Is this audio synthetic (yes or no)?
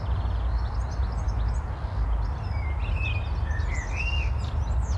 no